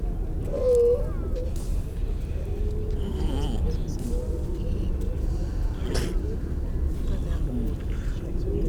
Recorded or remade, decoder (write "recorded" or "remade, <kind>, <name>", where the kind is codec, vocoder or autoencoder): recorded